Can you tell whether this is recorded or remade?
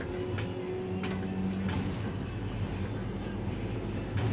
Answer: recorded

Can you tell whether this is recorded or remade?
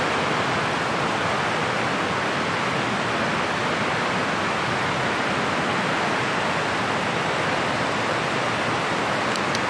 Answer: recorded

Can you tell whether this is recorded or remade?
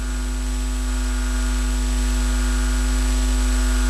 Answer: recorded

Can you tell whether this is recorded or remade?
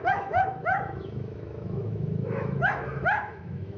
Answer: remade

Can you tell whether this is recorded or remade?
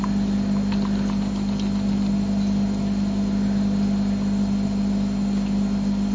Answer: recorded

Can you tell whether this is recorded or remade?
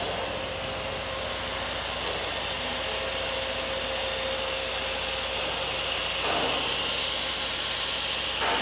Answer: recorded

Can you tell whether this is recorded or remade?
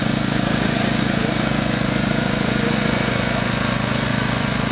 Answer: remade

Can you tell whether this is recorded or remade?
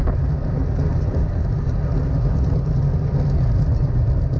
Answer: recorded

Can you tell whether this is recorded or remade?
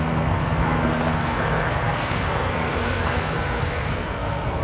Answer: remade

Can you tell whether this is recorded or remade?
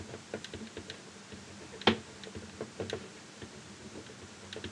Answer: recorded